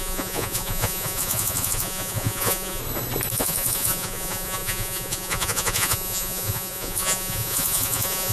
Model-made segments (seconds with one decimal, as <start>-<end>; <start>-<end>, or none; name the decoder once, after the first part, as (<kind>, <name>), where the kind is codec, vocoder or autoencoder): 0.0-2.8 (vocoder, Vocos); 3.3-8.3

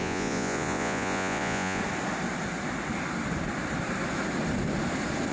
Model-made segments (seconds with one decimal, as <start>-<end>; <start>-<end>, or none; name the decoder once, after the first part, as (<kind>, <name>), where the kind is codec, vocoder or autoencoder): 0.0-1.8 (vocoder, Vocos)

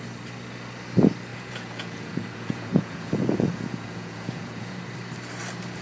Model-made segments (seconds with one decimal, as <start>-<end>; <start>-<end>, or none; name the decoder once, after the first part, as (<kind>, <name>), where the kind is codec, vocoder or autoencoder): 1.3-4.8 (vocoder, Vocos)

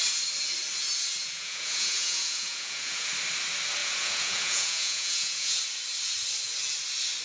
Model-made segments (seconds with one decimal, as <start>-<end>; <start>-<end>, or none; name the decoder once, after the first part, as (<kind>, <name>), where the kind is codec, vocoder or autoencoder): 1.2-3.1 (vocoder, Vocos); 3.8-5.6

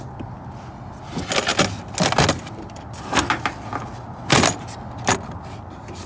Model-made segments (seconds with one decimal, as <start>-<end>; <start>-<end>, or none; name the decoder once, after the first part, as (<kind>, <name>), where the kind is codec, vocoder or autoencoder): none

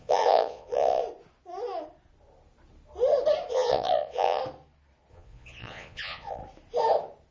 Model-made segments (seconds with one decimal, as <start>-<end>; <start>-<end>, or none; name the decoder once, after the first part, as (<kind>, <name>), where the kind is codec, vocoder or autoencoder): 0.0-1.0 (vocoder, Vocos); 3.5-4.4; 5.1-6.4

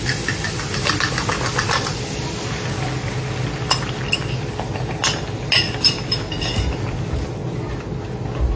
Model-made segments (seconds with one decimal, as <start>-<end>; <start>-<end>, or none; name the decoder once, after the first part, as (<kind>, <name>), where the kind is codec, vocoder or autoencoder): none